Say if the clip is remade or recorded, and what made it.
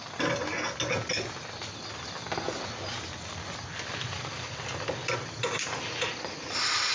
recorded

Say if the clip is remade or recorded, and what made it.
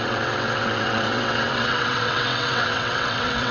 remade, vocoder, WaveNeXt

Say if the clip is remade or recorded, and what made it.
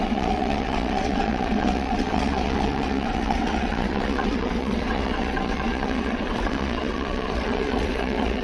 remade, vocoder, WaveNeXt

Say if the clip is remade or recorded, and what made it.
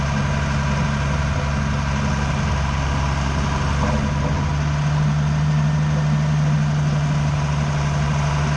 recorded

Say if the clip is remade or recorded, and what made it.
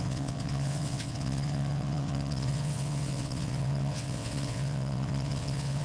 remade, vocoder, WaveNeXt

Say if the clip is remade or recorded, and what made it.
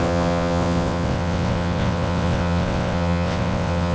remade, vocoder, WaveNeXt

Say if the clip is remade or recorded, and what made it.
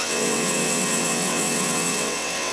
remade, vocoder, WaveNeXt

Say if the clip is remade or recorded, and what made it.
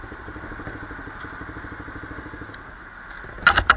recorded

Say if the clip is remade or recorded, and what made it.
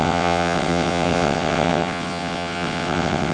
remade, vocoder, WaveNeXt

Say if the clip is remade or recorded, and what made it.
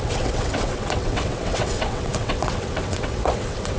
remade, vocoder, WaveNeXt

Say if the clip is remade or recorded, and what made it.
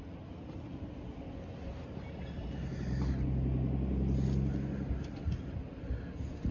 recorded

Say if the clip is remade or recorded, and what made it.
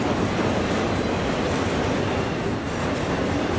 recorded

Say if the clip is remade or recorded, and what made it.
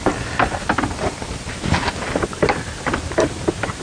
recorded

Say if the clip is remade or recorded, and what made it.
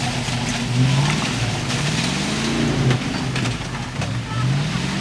recorded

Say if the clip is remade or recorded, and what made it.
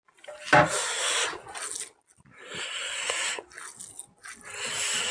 recorded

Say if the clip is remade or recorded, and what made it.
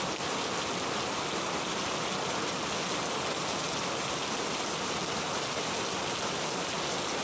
recorded